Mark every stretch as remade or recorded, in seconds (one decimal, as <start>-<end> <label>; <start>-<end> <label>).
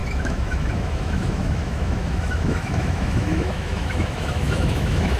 0.0-5.2 remade